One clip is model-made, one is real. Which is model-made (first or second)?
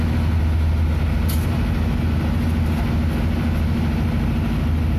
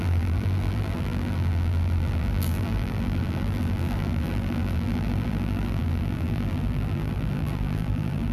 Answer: second